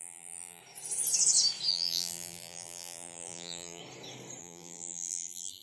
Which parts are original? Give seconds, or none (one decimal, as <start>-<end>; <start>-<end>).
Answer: 0.6-1.7; 3.8-4.4